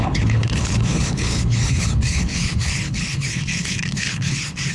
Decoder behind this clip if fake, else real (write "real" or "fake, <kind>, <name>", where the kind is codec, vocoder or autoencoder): fake, codec, HILCodec